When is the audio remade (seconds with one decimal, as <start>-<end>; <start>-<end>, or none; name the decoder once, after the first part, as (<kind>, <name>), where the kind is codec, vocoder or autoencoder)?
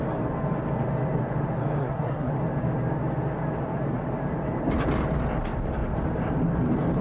1.8-2.3 (codec, SNAC)